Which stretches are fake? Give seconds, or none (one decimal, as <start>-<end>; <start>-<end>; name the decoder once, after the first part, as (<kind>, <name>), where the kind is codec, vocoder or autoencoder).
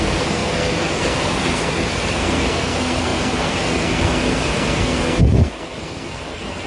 0.0-6.7 (codec, SNAC)